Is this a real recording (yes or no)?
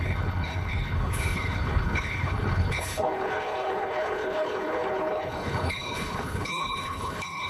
no